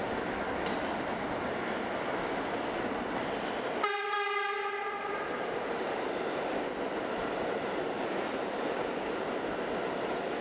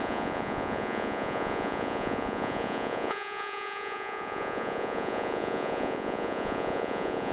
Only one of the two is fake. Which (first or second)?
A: second